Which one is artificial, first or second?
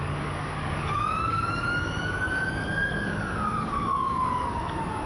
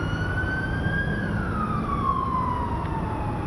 first